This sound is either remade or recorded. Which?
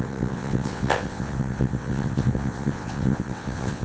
remade